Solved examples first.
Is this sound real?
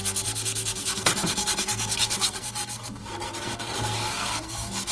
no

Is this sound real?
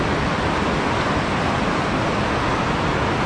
yes